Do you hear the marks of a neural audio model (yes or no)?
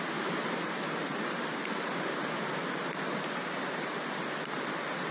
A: no